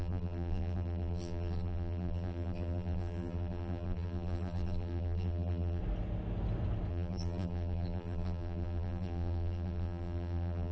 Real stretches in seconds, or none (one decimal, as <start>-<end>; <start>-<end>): 5.8-6.9